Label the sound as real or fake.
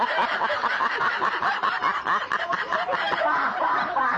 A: fake